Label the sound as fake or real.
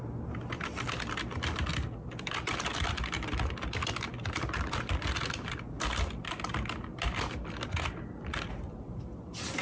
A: real